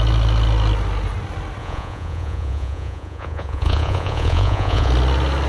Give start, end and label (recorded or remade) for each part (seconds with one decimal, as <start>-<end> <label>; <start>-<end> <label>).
0.0-1.6 recorded; 1.6-4.9 remade; 4.9-5.5 recorded